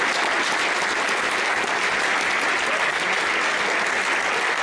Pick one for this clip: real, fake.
real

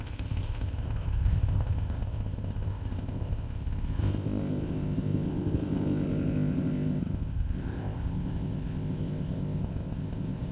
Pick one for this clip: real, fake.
fake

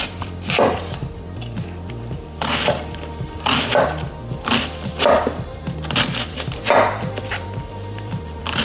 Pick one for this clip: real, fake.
fake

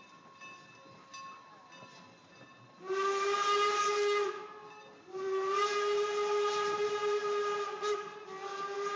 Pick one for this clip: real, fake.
real